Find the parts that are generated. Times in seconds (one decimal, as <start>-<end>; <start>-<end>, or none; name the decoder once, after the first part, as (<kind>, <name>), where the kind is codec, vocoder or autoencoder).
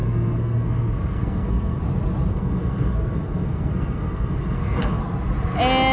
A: 0.0-1.8 (codec, SNAC); 2.3-5.0